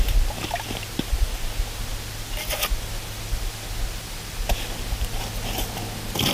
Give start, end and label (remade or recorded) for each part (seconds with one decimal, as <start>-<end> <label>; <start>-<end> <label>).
0.0-6.3 recorded